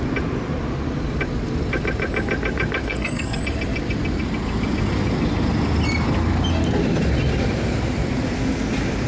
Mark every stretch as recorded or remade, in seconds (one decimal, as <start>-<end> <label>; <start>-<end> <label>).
0.0-2.8 recorded; 2.8-3.4 remade; 3.4-9.1 recorded